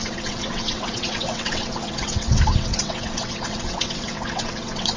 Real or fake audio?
fake